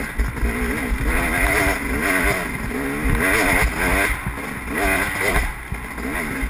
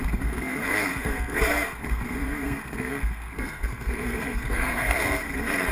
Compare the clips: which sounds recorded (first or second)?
first